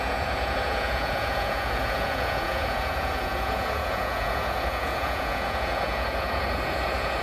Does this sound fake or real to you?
fake